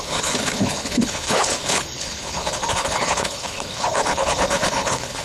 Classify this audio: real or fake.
fake